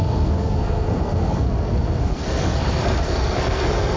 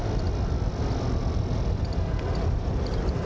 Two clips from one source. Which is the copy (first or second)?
first